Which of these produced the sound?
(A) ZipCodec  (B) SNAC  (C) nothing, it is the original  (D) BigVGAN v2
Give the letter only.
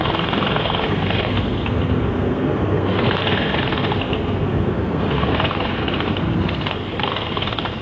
B